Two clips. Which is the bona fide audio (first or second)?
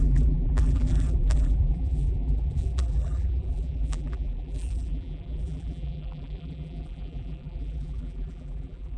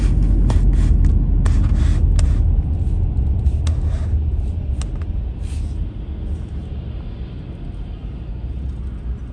second